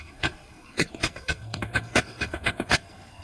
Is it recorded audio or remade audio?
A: remade